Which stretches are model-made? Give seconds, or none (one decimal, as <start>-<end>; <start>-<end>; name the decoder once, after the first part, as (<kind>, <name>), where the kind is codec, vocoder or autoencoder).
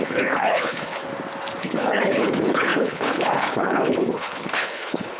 0.0-1.0 (codec, HILCodec); 1.6-5.2